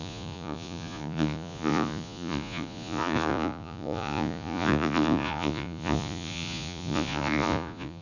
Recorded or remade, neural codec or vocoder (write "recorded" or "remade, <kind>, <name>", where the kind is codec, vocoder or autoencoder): remade, vocoder, Vocos